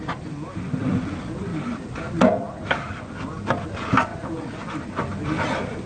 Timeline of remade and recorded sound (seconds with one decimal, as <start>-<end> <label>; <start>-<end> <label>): 0.0-5.9 recorded